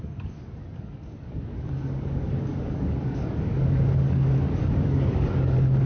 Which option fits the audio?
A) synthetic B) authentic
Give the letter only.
A